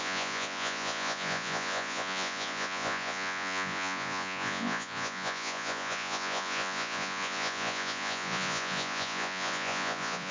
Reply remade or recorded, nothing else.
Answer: remade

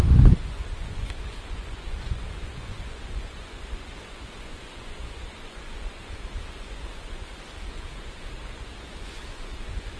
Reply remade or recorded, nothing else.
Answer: remade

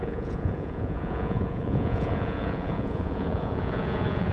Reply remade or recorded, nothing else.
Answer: remade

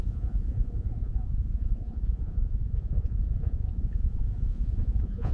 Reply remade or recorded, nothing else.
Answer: remade